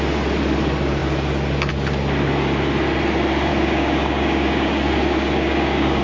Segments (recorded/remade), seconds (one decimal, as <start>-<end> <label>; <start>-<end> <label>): 0.0-3.5 recorded; 3.5-6.0 remade